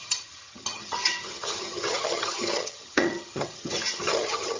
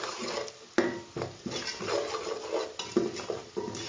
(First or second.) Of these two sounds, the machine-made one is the first